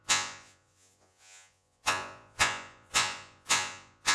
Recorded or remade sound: remade